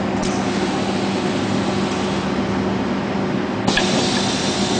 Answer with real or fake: real